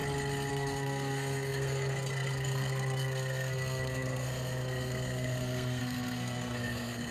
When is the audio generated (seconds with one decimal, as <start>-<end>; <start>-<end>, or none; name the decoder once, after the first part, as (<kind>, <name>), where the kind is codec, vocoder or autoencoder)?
0.5-7.1 (codec, SNAC)